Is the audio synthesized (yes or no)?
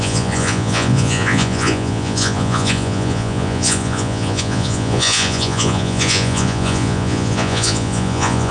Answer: yes